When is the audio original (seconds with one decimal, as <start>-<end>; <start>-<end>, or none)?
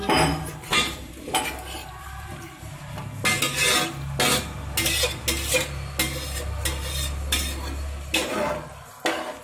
0.0-0.7; 1.4-1.8; 2.9-9.4